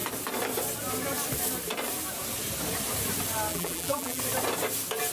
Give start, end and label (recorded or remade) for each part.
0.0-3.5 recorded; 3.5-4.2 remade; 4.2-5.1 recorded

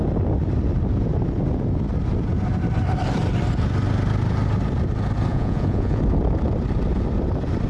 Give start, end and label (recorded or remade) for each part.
0.0-5.3 recorded; 5.3-6.0 remade; 6.0-7.7 recorded

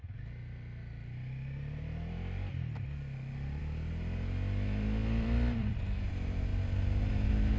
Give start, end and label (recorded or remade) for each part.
0.0-5.0 recorded; 5.0-5.8 remade; 5.8-6.5 recorded; 6.5-7.1 remade; 7.1-7.6 recorded

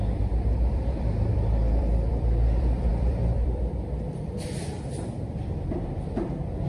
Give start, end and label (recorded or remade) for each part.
0.0-6.7 remade

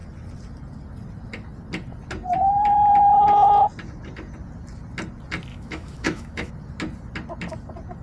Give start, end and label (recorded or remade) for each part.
0.0-5.5 recorded; 5.5-6.5 remade; 6.5-8.0 recorded

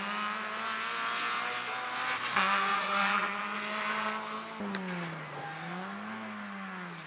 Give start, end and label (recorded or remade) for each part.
0.0-2.7 recorded; 2.7-3.4 remade; 3.4-7.1 recorded